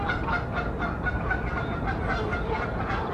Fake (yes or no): yes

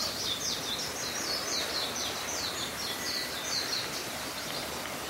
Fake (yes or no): no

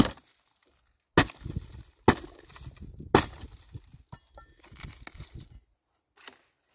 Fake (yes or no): no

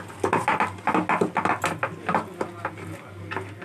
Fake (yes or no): no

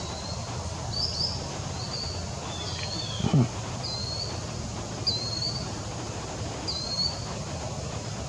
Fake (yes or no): no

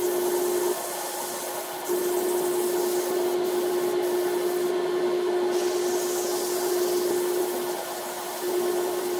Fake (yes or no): no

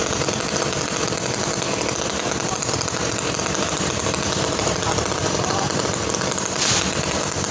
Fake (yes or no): yes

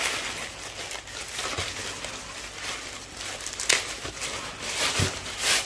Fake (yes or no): no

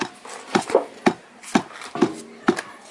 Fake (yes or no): no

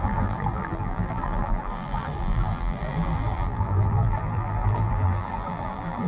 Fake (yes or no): yes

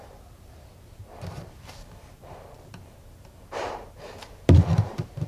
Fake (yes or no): yes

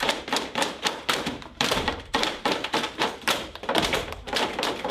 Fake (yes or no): yes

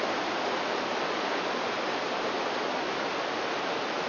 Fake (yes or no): no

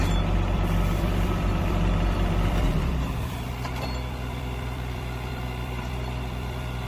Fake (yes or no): yes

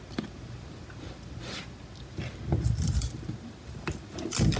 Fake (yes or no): no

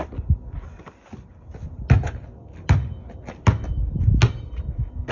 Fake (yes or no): no